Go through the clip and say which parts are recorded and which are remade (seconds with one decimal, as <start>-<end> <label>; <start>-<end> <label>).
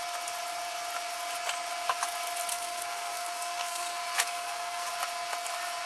0.0-2.5 recorded; 2.5-4.9 remade; 4.9-5.9 recorded